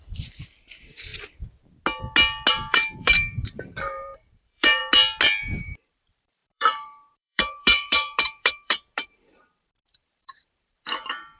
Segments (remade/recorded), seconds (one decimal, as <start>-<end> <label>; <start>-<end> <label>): 0.0-1.1 remade; 1.1-2.5 recorded; 2.5-4.8 remade; 4.8-5.6 recorded; 5.6-11.4 remade